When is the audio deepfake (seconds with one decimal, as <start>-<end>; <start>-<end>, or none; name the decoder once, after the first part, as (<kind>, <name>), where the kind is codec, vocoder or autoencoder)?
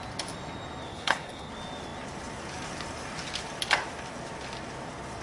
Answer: 0.9-1.5 (codec, HILCodec)